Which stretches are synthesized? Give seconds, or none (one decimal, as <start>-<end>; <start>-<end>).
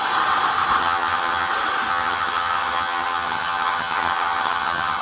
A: 0.8-1.5; 1.9-5.0